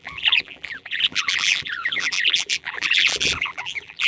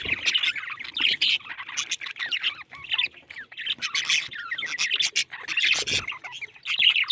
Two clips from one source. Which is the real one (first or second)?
second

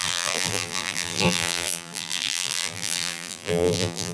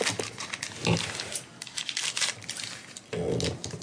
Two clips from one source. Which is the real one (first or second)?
second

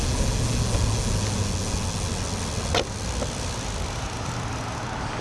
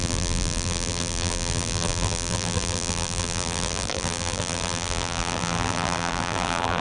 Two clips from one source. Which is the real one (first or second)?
first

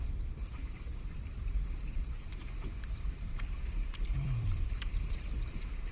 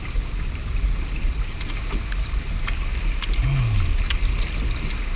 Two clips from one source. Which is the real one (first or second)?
second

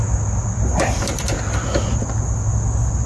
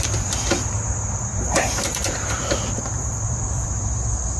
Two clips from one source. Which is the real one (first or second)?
first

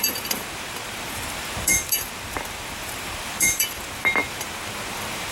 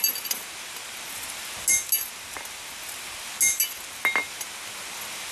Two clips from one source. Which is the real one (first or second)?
second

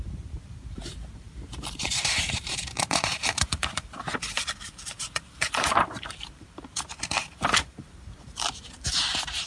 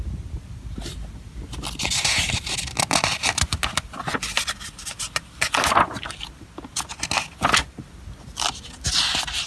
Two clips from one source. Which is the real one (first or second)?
second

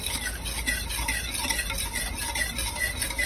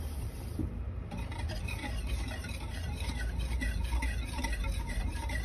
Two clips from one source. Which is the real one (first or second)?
first